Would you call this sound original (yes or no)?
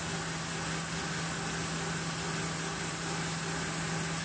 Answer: yes